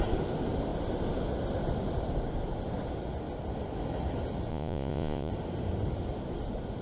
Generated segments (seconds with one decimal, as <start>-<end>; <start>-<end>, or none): 4.5-5.3